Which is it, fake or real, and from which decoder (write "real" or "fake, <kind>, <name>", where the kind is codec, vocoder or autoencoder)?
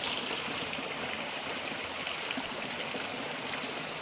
real